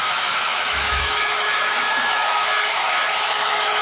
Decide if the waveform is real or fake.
fake